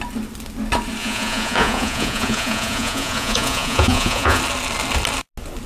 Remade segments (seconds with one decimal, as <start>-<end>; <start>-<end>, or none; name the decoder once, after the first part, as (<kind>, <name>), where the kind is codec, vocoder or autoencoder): 1.0-4.4 (vocoder, Vocos)